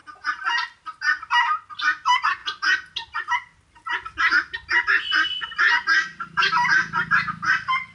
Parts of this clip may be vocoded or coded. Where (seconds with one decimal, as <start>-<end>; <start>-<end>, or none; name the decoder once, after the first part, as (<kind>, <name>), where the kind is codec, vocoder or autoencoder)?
none